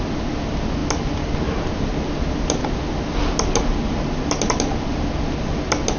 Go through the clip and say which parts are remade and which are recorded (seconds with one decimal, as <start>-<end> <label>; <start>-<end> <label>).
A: 0.0-6.0 recorded